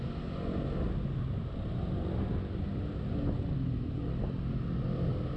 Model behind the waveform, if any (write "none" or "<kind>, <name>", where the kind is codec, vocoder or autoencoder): none